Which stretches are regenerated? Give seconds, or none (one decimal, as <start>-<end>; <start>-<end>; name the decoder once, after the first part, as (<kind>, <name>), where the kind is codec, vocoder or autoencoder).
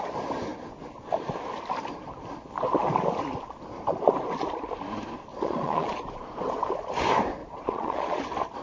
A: 5.3-6.0 (vocoder, Vocos); 7.4-8.2